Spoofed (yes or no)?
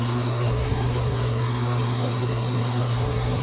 yes